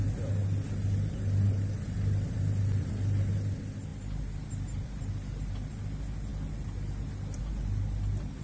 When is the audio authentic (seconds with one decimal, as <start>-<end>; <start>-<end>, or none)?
0.0-3.9; 5.8-6.3; 7.4-8.4